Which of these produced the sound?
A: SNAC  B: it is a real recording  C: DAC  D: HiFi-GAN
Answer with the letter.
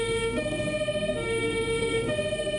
A